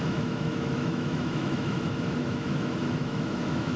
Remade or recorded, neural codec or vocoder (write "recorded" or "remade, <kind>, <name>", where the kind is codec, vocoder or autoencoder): remade, autoencoder, DAC-VAE